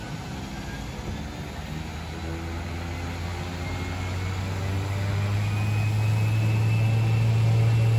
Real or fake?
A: real